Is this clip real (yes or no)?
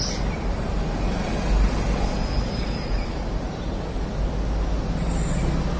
yes